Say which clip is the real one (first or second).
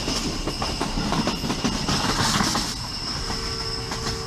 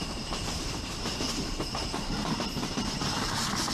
first